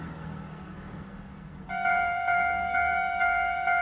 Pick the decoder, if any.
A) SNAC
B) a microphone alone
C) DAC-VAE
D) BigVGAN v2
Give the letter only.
A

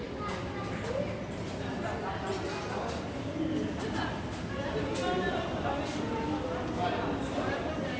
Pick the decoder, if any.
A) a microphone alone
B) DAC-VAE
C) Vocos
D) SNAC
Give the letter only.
A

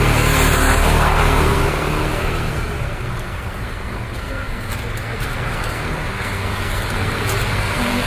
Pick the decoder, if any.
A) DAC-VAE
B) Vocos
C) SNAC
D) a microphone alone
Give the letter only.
C